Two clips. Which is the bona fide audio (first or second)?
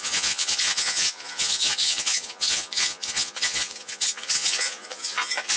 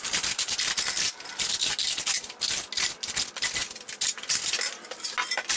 second